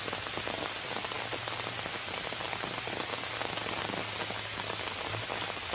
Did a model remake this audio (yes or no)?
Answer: no